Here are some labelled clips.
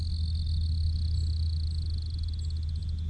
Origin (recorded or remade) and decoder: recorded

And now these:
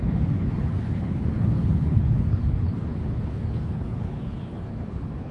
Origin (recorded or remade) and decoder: remade, codec, HILCodec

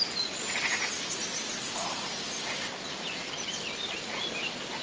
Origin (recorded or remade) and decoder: recorded